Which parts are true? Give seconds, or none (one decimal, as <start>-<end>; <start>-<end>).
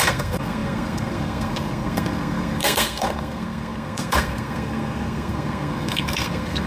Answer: none